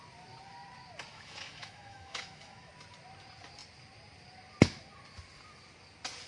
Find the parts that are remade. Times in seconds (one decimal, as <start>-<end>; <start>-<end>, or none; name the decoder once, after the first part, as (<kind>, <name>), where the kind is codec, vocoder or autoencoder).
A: 1.1-2.7 (autoencoder, DAC-VAE)